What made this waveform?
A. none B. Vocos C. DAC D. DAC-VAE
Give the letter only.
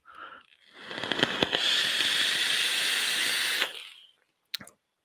A